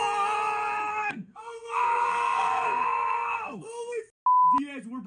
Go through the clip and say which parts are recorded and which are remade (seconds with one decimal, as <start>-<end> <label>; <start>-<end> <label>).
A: 0.0-0.9 recorded; 0.9-4.0 remade; 4.0-5.1 recorded

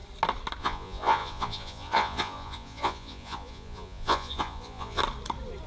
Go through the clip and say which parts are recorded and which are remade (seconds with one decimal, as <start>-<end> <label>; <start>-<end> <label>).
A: 0.0-0.6 recorded; 0.6-5.0 remade; 5.0-5.7 recorded

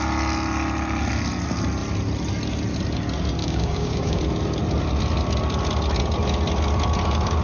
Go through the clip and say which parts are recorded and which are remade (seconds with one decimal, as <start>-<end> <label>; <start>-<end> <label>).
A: 0.0-3.4 recorded; 3.4-4.2 remade; 4.2-7.4 recorded

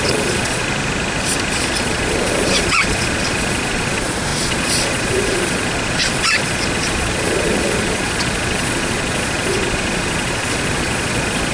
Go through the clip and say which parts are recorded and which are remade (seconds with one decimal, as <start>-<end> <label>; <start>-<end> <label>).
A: 0.0-0.6 remade; 0.6-1.8 recorded; 1.8-11.5 remade